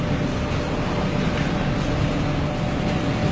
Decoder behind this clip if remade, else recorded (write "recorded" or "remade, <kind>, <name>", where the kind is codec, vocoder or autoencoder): recorded